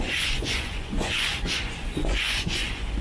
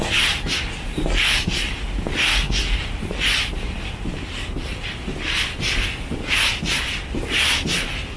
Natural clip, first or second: second